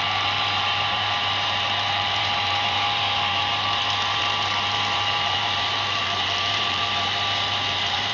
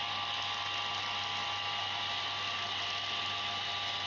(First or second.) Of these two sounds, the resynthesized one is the first